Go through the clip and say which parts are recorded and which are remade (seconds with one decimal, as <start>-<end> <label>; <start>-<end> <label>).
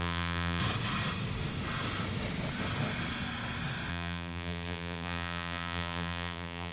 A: 0.0-0.6 remade; 0.6-3.9 recorded; 3.9-6.7 remade